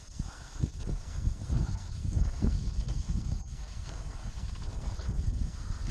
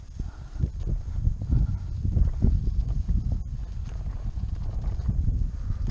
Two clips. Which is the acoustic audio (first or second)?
second